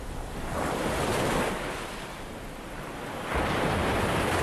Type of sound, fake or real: real